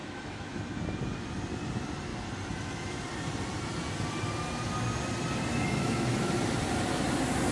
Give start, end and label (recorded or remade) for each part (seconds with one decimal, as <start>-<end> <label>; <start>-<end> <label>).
0.0-0.6 remade; 0.6-5.5 recorded; 5.5-6.3 remade; 6.3-7.5 recorded